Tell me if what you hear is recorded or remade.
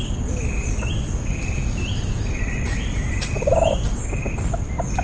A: recorded